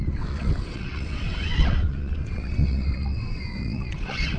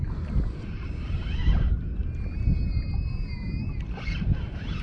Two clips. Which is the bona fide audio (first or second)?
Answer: second